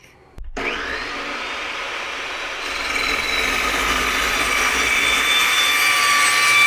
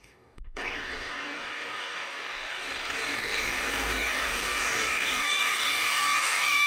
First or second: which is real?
first